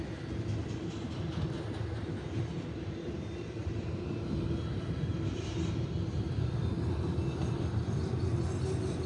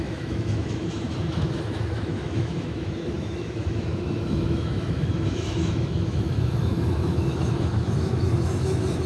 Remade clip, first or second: second